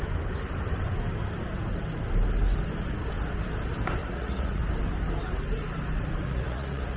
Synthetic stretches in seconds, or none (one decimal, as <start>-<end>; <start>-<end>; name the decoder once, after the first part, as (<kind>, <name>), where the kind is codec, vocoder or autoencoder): 4.0-4.6 (vocoder, Vocos); 6.2-7.0